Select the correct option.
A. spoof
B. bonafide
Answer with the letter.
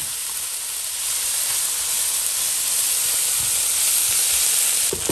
B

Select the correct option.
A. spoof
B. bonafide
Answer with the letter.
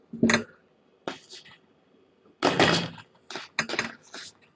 B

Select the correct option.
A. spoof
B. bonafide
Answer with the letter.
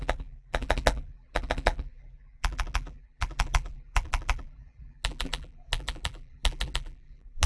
A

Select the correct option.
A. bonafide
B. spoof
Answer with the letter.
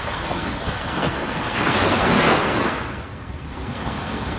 B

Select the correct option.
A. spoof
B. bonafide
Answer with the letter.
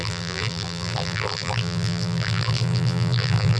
A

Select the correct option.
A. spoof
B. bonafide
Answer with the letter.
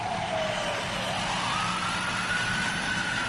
B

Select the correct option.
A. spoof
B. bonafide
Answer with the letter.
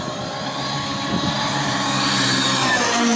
A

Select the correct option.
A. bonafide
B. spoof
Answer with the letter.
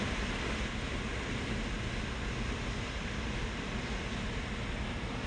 A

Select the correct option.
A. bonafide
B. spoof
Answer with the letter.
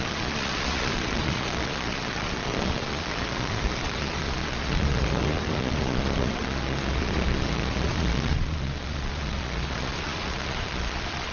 B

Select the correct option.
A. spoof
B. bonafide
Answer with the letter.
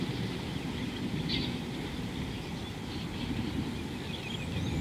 B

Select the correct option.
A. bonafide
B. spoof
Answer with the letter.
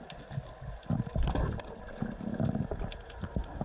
A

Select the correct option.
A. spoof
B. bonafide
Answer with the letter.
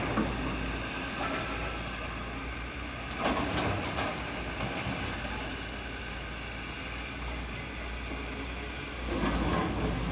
B